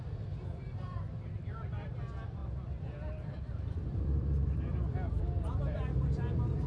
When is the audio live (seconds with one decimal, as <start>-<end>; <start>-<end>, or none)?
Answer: none